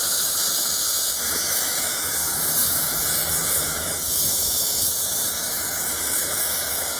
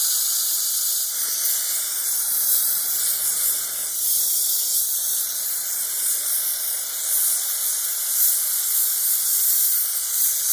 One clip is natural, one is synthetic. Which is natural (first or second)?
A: second